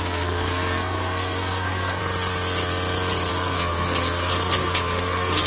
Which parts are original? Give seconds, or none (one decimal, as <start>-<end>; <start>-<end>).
2.0-3.3